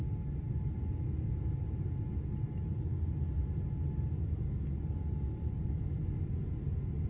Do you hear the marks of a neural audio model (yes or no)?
no